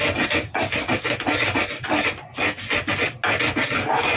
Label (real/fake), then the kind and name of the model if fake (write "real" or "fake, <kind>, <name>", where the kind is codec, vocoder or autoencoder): real